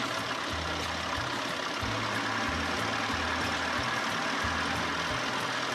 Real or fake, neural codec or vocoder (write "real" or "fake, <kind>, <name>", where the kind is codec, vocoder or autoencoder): real